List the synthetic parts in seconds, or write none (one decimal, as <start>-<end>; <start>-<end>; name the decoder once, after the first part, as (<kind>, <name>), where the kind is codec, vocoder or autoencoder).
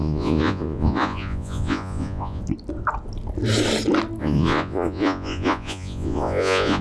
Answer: 0.0-2.4 (vocoder, Vocos); 4.2-6.8